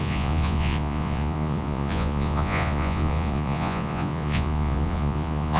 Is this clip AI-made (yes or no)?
yes